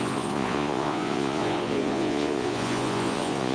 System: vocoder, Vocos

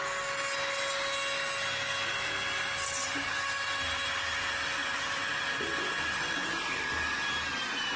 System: none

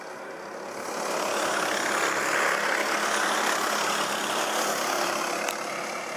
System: none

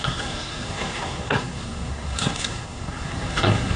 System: codec, SNAC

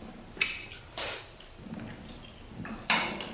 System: none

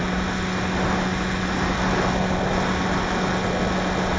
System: none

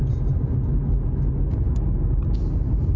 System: none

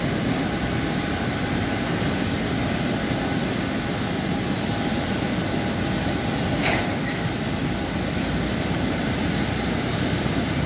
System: none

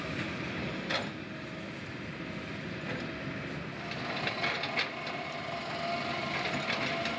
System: none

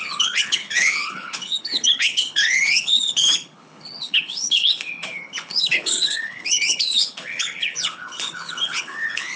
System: codec, HILCodec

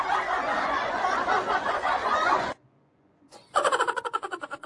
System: vocoder, Vocos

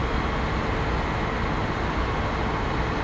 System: none